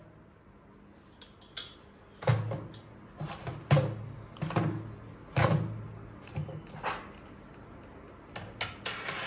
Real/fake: real